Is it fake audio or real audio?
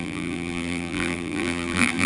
fake